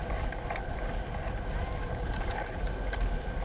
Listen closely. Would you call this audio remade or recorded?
recorded